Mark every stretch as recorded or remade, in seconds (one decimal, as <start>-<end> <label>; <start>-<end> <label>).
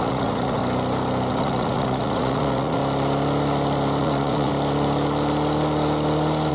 0.0-0.6 remade; 0.6-1.3 recorded; 1.3-2.8 remade; 2.8-4.0 recorded; 4.0-4.5 remade; 4.5-6.5 recorded